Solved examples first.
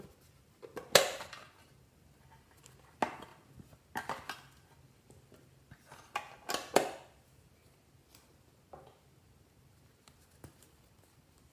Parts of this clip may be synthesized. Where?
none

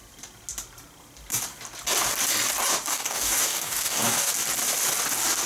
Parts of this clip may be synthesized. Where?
2.9-4.3 (codec, DAC)

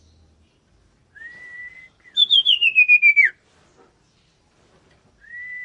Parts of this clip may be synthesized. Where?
none

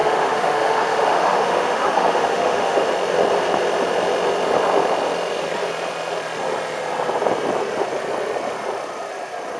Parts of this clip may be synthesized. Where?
0.0-2.9 (autoencoder, DAC-VAE)

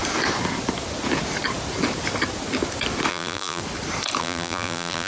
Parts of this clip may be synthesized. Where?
3.1-3.6 (vocoder, BigVGAN v2); 4.2-5.1